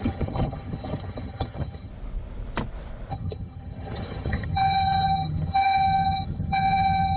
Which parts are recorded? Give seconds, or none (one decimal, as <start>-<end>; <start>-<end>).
1.9-3.1